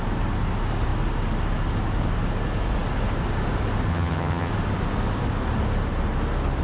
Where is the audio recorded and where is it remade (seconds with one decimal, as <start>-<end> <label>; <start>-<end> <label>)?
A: 0.0-3.9 recorded; 3.9-4.5 remade; 4.5-6.6 recorded